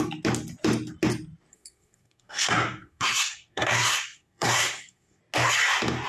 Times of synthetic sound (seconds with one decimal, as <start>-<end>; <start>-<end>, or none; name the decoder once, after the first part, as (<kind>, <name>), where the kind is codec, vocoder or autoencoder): 1.5-5.2 (codec, SNAC)